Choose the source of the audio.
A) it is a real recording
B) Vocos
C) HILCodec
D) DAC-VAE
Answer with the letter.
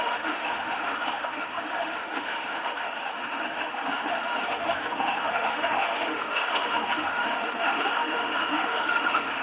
D